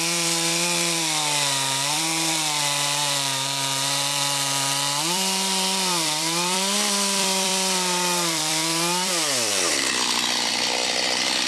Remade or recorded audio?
remade